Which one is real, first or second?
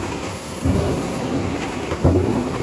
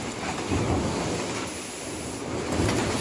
second